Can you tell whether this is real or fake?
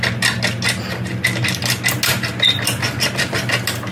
real